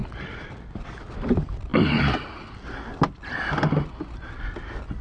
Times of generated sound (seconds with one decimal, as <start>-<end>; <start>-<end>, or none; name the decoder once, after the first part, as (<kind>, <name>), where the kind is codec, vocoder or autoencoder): none